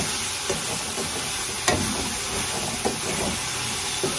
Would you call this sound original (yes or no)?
yes